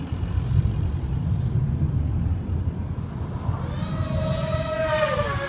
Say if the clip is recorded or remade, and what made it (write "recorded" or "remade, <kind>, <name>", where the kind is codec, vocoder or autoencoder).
recorded